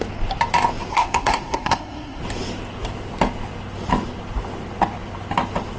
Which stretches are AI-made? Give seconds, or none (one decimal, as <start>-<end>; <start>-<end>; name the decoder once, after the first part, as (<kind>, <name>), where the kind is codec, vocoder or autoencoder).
0.9-2.2 (codec, SNAC)